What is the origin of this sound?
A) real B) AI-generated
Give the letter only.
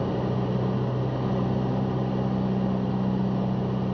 A